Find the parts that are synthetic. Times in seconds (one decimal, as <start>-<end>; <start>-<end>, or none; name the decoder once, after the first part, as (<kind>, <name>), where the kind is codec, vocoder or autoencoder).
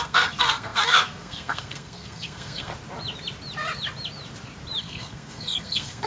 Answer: 0.0-2.7 (codec, SNAC); 4.8-6.1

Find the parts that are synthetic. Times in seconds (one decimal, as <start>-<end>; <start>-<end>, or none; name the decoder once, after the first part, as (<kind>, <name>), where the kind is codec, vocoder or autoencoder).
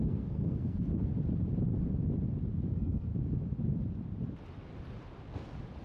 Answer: 0.0-1.1 (codec, SNAC); 2.7-3.1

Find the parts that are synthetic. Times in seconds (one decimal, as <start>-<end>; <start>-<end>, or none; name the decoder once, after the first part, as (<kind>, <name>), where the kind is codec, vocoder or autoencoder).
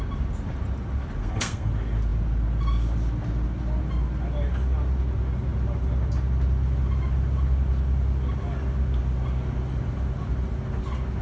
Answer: 1.2-1.7 (codec, SNAC)